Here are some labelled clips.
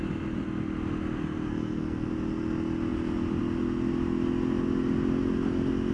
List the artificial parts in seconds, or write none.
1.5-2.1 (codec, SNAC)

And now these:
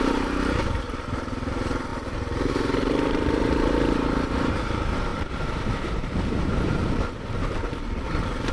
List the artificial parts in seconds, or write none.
0.0-1.9 (vocoder, BigVGAN v2); 2.5-8.5

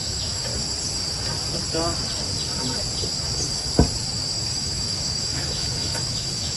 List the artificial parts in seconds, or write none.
0.0-0.5 (autoencoder, DAC-VAE); 4.5-6.6

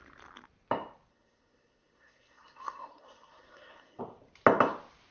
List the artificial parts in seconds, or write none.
1.1-4.0 (codec, SNAC)

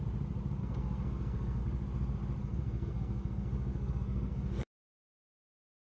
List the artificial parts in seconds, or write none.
0.6-1.6 (codec, SNAC); 2.4-5.9

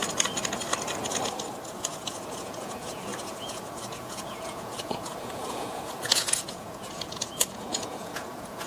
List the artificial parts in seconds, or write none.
1.7-8.7 (vocoder, Vocos)